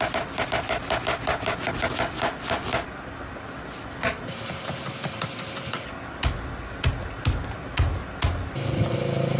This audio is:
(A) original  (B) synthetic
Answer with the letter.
A